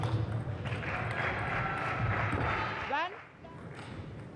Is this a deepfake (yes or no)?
no